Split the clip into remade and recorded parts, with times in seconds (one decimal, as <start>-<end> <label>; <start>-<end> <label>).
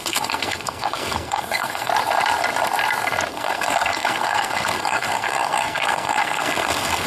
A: 0.0-1.9 remade; 1.9-3.3 recorded; 3.3-7.1 remade